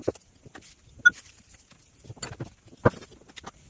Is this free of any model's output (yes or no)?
yes